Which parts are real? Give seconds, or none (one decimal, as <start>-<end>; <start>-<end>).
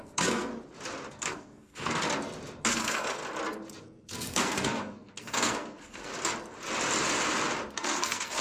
0.5-1.1; 2.0-2.7; 3.2-3.8; 6.1-7.7